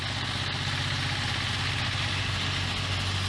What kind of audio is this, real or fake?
real